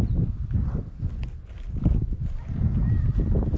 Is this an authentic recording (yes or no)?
yes